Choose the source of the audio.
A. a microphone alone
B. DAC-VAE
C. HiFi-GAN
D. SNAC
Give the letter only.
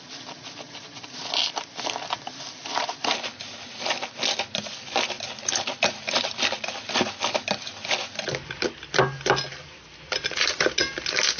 A